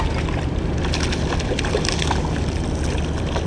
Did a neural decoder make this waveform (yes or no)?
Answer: no